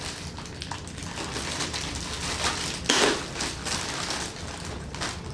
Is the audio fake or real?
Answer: real